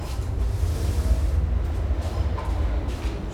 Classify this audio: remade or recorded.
recorded